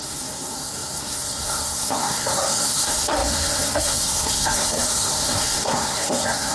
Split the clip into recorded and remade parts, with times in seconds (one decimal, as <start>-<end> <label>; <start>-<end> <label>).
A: 0.0-6.5 remade